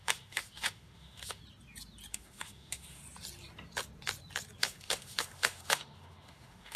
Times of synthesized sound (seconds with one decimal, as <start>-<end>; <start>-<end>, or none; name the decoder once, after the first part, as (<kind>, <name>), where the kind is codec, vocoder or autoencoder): 0.0-1.4 (autoencoder, DAC-VAE); 2.1-3.0; 4.6-6.8